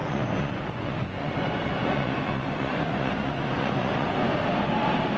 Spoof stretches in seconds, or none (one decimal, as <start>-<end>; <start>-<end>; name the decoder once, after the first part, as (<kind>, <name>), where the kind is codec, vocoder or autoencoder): 0.0-4.1 (vocoder, Vocos)